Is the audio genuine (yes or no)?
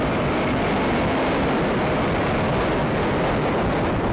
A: yes